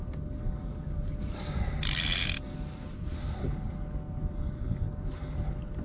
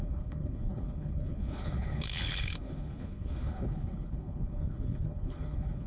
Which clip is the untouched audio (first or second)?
first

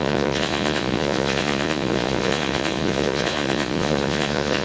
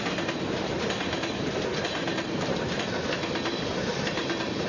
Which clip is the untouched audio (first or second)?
second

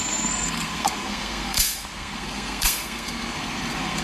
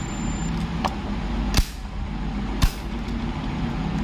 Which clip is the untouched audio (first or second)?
second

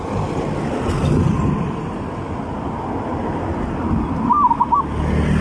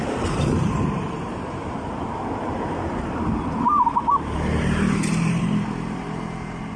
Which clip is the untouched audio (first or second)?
first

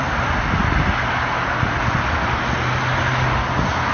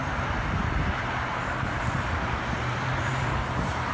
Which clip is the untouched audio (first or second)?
first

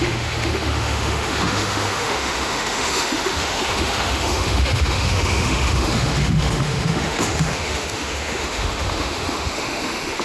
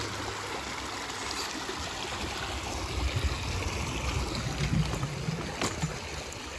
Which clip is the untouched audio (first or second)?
second